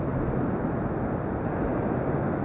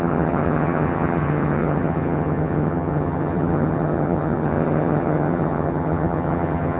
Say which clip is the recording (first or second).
first